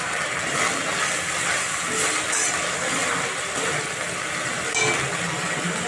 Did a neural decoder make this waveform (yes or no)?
no